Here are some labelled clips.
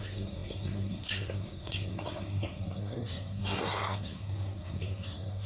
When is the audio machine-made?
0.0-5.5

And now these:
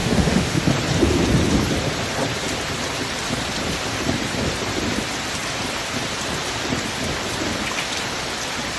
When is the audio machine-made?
0.0-0.6